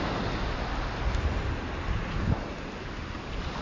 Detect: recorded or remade recorded